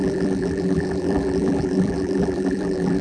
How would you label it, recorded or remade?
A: remade